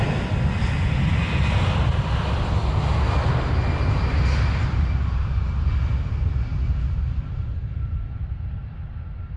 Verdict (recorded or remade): recorded